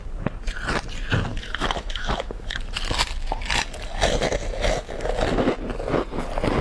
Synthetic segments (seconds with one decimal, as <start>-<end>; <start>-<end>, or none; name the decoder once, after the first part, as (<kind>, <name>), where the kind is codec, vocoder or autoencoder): 1.3-2.6 (autoencoder, DAC-VAE)